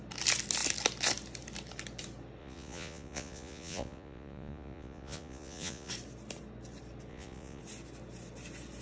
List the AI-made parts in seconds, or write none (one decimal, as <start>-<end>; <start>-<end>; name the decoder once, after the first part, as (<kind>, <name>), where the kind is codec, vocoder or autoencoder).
2.4-5.9 (vocoder, Vocos); 7.1-7.6